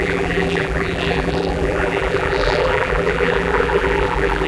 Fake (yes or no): yes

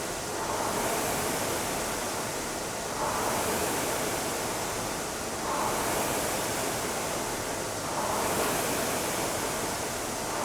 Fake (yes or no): no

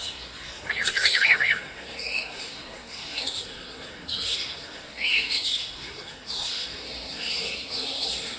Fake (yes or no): yes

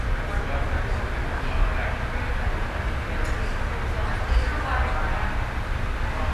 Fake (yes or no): no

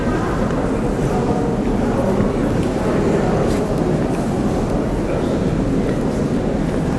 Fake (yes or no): no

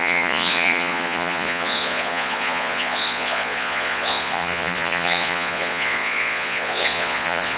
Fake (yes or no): yes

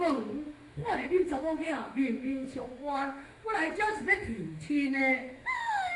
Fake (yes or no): yes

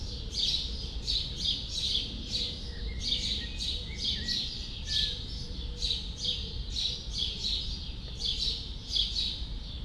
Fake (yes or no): no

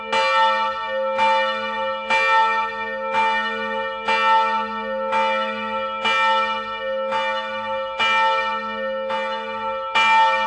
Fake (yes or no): no